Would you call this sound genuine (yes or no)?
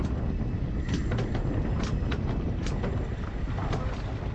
yes